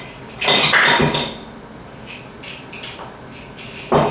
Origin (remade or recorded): recorded